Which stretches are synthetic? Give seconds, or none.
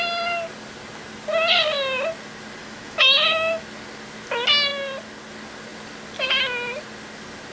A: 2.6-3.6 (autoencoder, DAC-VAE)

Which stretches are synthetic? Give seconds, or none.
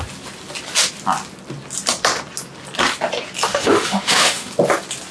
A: 3.5-4.5 (autoencoder, DAC-VAE)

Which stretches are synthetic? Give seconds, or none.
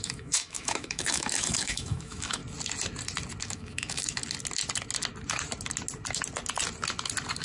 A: 0.0-2.4 (autoencoder, DAC-VAE); 3.4-4.2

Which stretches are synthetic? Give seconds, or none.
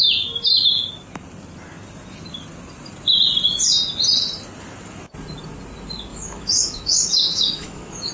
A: 6.1-8.1 (autoencoder, DAC-VAE)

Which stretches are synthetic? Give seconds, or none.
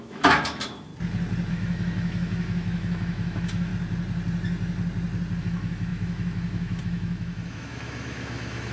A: 0.0-0.9 (autoencoder, DAC-VAE); 1.5-3.7; 5.4-8.7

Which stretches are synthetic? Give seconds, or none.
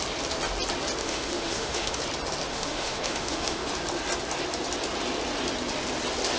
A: 1.0-2.0 (autoencoder, DAC-VAE); 2.5-3.7